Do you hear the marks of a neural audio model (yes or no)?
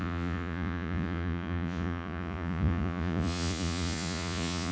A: yes